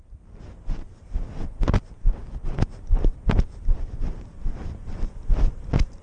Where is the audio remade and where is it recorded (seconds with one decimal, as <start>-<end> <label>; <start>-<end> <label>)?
0.0-2.2 recorded; 2.2-6.0 remade